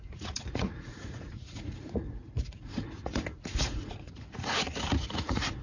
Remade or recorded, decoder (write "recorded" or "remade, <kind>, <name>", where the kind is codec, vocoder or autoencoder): remade, vocoder, Vocos